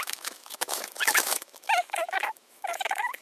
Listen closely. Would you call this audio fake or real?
fake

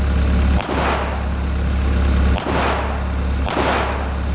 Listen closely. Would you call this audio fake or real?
real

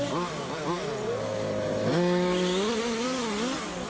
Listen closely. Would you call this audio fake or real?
real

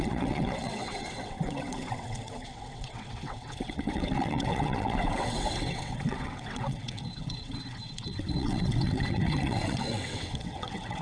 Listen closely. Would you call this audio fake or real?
fake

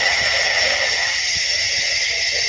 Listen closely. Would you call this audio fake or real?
fake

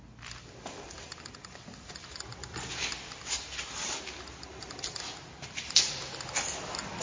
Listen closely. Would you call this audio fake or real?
real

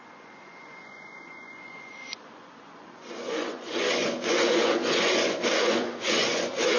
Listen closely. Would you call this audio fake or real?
fake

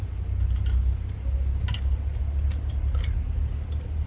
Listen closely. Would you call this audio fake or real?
real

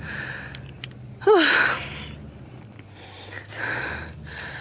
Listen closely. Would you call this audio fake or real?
real